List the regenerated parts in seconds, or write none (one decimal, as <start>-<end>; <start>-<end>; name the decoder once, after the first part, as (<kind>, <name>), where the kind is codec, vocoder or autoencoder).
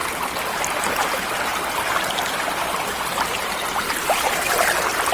0.0-0.6 (vocoder, BigVGAN v2); 1.5-2.2